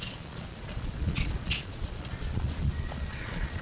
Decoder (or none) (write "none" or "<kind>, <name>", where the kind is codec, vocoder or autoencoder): vocoder, Vocos